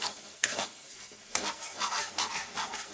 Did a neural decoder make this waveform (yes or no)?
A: yes